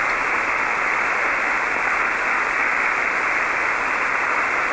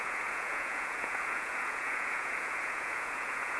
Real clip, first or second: first